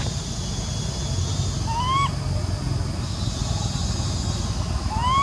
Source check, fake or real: real